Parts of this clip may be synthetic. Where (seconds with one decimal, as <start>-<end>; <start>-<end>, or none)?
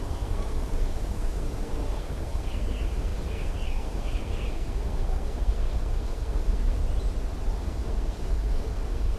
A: 0.0-6.8; 7.6-9.2